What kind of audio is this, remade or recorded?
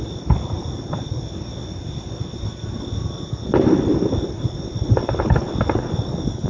recorded